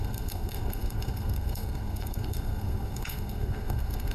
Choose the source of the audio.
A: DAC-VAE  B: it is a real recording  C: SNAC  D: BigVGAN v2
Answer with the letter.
C